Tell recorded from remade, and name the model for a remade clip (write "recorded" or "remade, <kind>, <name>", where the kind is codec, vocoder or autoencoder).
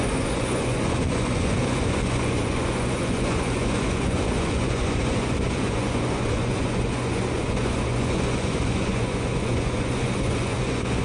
remade, vocoder, Vocos